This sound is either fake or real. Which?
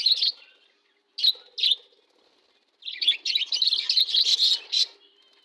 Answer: real